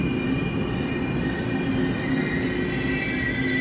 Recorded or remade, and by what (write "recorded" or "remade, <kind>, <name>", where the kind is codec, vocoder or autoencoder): recorded